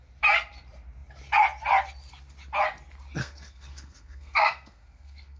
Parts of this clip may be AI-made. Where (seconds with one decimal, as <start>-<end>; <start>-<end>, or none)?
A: 3.2-5.4